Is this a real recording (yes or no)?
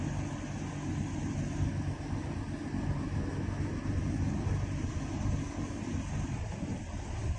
yes